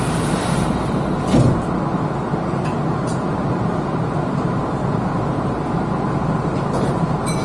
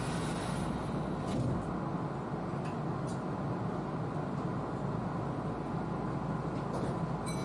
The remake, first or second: first